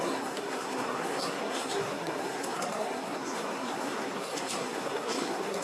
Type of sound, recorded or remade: remade